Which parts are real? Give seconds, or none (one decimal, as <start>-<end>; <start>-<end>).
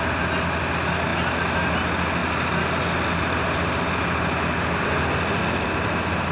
0.0-6.3